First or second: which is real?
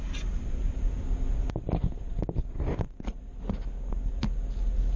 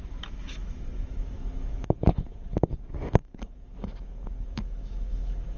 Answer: first